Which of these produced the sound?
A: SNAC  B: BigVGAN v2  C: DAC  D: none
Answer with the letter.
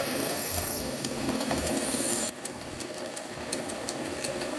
C